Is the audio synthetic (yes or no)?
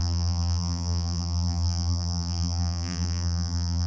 yes